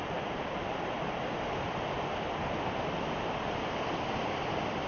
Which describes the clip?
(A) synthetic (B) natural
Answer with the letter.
A